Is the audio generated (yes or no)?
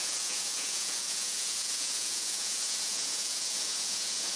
yes